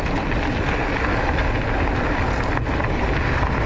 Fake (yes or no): no